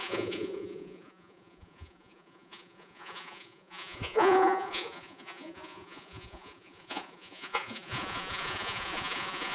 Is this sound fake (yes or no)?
yes